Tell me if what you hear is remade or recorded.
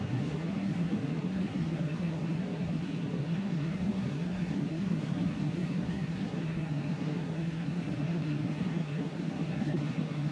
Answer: remade